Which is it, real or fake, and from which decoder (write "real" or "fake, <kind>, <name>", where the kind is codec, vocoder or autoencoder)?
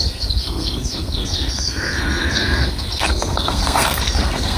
fake, codec, SNAC